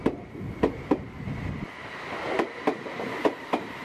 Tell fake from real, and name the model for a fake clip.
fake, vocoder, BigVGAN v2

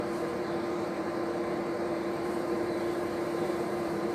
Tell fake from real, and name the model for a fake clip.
fake, vocoder, BigVGAN v2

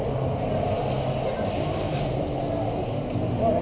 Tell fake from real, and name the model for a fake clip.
real